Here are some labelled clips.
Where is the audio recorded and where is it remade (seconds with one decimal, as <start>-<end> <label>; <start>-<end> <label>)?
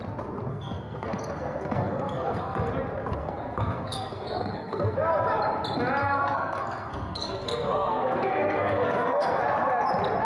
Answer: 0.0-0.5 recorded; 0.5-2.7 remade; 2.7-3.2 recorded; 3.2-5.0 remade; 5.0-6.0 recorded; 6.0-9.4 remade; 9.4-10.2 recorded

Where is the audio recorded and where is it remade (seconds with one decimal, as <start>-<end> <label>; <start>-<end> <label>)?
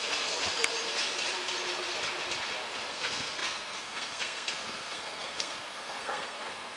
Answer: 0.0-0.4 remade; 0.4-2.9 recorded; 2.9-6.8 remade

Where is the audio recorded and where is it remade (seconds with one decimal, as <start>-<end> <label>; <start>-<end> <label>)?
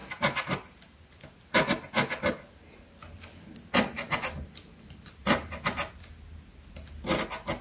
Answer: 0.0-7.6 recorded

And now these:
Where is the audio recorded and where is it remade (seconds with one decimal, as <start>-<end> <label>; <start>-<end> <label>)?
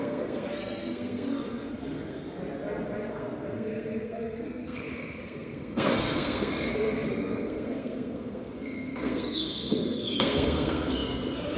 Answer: 0.0-2.4 remade; 2.4-3.1 recorded; 3.1-11.6 remade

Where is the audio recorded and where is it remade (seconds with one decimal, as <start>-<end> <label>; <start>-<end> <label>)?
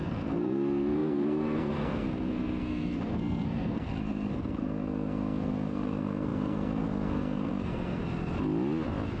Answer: 0.0-8.0 remade; 8.0-9.2 recorded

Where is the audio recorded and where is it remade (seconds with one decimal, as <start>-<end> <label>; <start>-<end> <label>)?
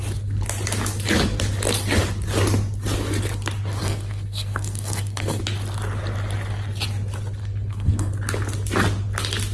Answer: 0.0-3.8 recorded; 3.8-5.4 remade; 5.4-7.4 recorded; 7.4-8.1 remade; 8.1-9.5 recorded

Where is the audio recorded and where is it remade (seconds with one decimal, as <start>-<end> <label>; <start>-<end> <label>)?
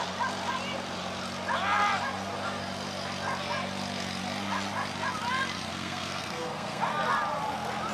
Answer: 0.0-5.7 recorded; 5.7-6.8 remade; 6.8-7.9 recorded